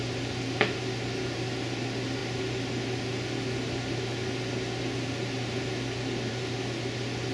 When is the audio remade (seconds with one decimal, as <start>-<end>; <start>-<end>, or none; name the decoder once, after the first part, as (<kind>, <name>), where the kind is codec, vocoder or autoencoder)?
none